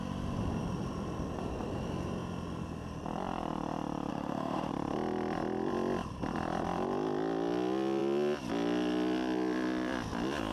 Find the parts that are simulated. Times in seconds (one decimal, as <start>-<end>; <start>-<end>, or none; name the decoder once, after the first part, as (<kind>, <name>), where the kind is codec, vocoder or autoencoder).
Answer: 4.1-4.7 (autoencoder, DAC-VAE)